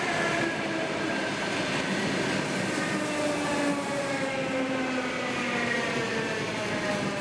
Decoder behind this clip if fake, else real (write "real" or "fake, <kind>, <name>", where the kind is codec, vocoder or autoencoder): real